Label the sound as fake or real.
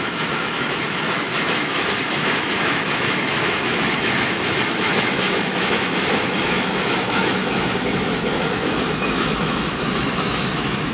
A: fake